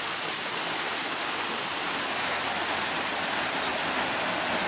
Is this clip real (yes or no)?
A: yes